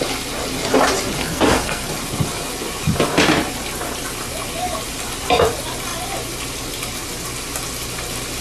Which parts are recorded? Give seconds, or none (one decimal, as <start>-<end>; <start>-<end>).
0.0-1.2; 1.9-8.4